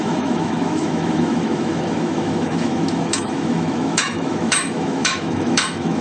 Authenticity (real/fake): fake